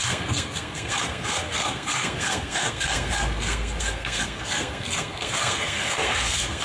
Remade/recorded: remade